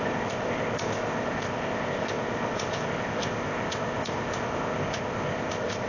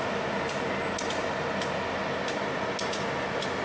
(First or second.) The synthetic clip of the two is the first